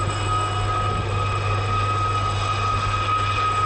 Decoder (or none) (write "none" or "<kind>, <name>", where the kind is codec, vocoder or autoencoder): none